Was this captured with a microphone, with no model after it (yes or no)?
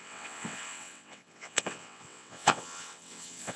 no